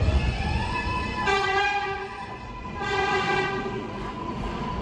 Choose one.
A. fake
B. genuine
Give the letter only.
A